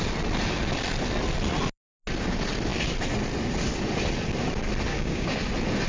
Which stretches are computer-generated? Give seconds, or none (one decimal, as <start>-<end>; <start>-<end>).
4.9-5.4